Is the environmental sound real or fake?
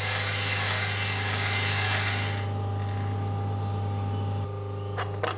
real